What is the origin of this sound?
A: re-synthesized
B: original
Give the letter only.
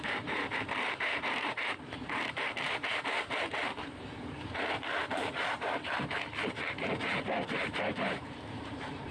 A